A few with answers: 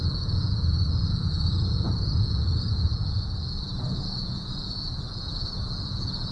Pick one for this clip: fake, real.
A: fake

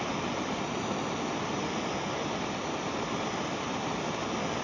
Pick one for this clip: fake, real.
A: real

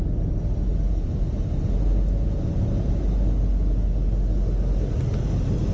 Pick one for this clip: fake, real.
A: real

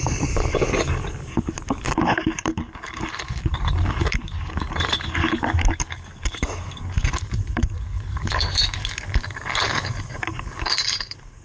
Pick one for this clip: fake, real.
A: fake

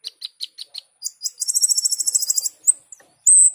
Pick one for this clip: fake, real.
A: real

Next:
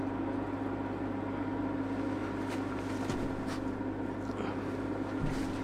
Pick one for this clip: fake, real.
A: real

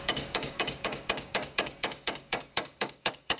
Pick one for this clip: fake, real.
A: fake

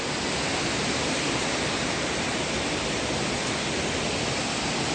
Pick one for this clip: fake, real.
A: real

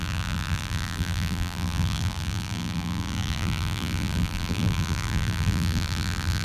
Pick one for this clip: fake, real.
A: fake